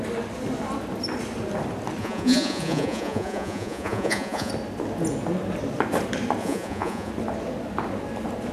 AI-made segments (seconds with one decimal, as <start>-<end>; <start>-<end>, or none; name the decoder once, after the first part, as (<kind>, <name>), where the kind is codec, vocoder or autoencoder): 2.0-4.5 (vocoder, Vocos); 6.4-7.1